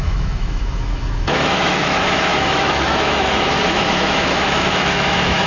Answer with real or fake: fake